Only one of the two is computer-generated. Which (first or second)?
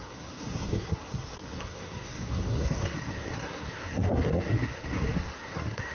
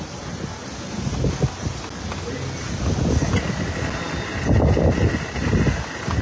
first